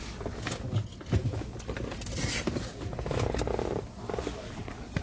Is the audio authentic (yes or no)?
yes